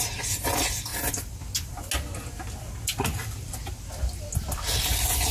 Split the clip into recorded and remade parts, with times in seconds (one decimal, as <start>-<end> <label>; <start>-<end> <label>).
0.0-5.3 recorded